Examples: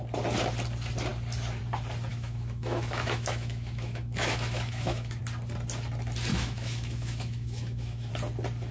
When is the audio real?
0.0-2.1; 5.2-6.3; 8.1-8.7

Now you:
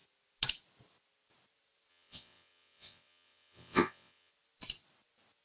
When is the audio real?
0.0-1.9; 4.3-5.4

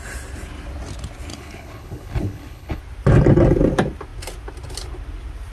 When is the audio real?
0.0-1.3; 2.8-5.5

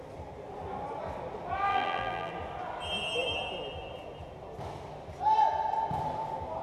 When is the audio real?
0.0-1.7; 2.3-6.6

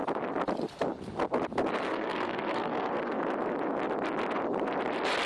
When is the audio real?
0.0-1.9; 3.1-5.3